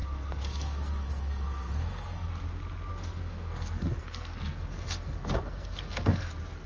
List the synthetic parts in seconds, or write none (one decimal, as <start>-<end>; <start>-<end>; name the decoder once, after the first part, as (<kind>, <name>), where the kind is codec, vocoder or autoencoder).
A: 0.0-2.3 (codec, SNAC); 2.9-6.3